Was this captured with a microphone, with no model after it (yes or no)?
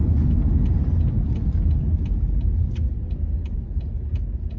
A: yes